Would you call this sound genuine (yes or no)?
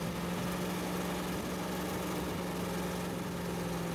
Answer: yes